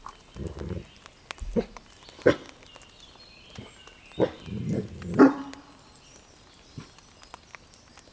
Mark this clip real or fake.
real